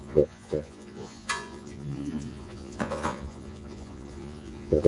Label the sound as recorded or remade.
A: remade